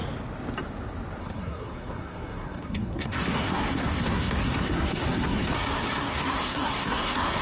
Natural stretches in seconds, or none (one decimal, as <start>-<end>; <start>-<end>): 0.0-1.2; 5.5-6.1